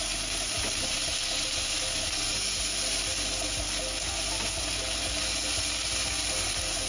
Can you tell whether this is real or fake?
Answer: real